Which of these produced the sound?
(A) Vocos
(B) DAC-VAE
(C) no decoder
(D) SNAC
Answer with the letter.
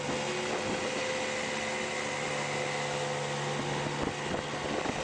C